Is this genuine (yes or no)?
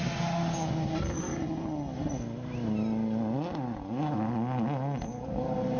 yes